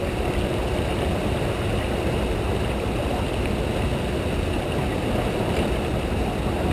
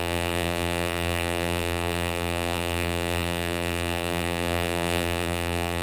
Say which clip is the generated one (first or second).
second